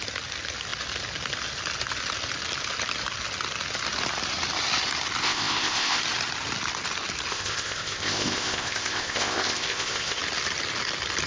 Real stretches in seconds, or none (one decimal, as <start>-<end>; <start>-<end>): 0.0-5.2; 6.0-7.3; 10.2-11.3